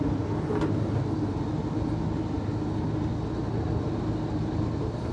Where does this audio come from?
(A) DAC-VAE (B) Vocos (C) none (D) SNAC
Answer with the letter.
C